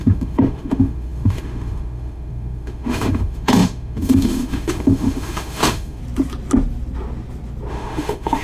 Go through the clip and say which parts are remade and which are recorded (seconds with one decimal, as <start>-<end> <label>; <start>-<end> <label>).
0.0-6.0 remade; 6.0-7.7 recorded; 7.7-8.4 remade